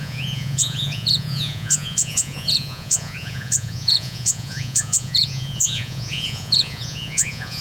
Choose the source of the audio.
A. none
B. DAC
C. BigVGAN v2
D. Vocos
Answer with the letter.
D